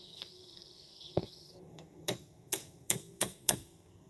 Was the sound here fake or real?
fake